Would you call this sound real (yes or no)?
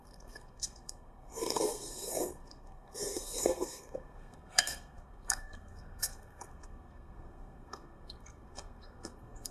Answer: no